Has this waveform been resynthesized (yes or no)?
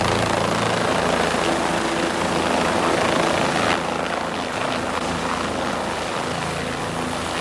no